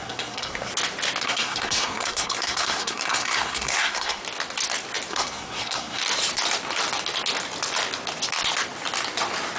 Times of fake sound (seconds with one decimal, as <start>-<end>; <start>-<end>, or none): 0.0-0.7; 1.2-4.2; 5.1-6.0